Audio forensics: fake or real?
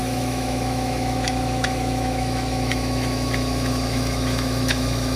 fake